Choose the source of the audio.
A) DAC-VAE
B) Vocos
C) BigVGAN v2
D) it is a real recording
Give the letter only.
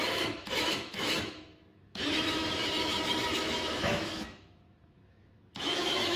A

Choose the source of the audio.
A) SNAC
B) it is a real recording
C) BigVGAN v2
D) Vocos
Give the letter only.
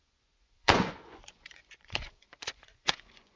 D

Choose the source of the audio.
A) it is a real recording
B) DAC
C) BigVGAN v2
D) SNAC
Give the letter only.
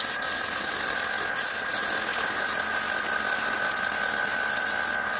A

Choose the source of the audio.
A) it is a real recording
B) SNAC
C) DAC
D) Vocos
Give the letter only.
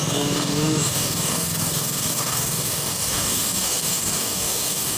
C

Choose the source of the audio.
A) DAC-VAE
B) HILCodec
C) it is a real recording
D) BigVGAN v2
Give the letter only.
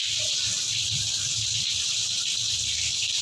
D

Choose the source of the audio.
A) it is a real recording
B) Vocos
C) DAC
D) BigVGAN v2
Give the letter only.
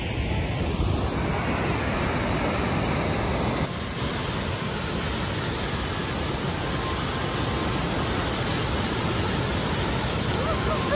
A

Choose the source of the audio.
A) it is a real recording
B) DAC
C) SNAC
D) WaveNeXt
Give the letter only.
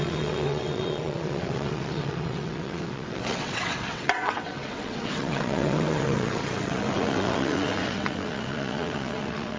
D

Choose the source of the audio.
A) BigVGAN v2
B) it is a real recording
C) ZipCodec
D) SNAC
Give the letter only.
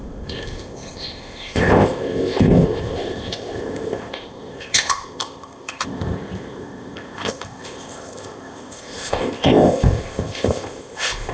C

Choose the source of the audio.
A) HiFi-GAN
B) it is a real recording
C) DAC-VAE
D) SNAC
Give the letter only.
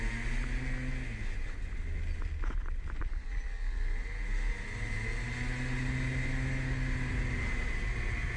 B